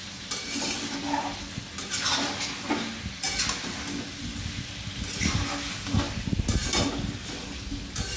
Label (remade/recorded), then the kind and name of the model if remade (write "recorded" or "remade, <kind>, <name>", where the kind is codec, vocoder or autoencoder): recorded